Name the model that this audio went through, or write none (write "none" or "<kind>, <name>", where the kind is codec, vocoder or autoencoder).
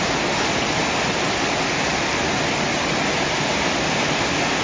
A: none